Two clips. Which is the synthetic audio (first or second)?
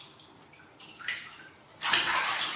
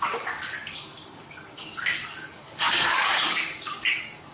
second